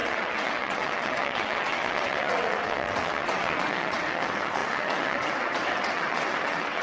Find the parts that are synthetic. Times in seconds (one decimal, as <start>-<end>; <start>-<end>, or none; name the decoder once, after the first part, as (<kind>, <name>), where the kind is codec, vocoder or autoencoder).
0.0-6.8 (vocoder, WaveNeXt)